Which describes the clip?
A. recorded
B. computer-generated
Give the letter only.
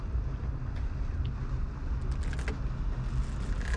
A